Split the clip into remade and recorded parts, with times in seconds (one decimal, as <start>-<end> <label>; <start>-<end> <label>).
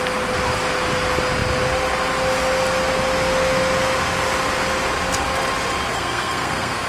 0.0-5.9 recorded; 5.9-6.9 remade